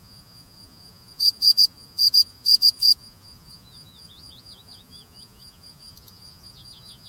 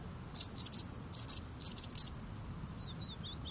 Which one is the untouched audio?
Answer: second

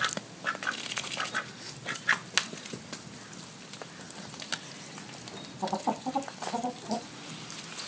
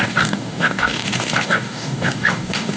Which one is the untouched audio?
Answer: first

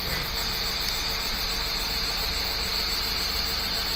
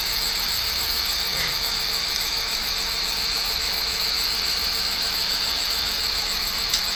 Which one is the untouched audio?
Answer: first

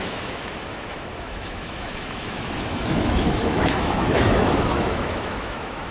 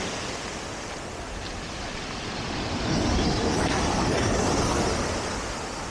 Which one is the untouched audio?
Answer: second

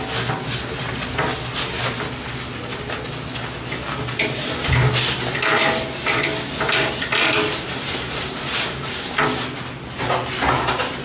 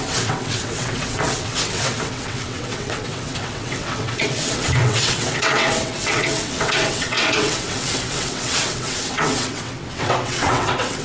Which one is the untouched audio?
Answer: first